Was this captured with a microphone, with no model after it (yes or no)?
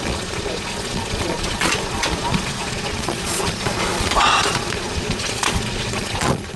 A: no